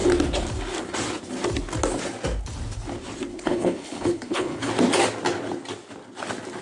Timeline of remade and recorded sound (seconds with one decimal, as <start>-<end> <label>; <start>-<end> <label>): 0.0-3.3 recorded; 3.3-4.7 remade; 4.7-6.6 recorded